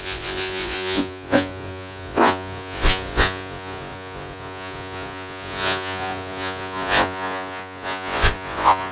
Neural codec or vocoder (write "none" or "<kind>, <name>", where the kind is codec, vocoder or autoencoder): vocoder, Vocos